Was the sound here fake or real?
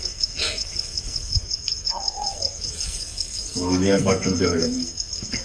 fake